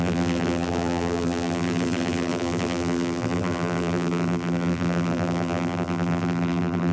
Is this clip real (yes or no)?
no